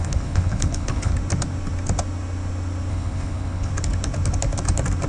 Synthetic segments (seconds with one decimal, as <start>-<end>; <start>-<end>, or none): 0.0-1.1; 2.9-3.7